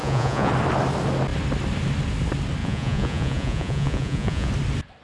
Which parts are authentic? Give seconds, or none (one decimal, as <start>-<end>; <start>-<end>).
0.5-2.6; 4.5-5.0